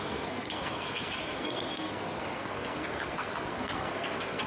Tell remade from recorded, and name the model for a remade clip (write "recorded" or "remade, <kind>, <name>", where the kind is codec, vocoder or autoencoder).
remade, codec, SNAC